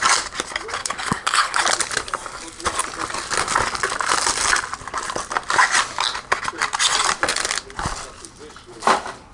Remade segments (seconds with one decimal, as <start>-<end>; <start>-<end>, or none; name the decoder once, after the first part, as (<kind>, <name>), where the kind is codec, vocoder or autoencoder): 0.8-1.6 (codec, HILCodec)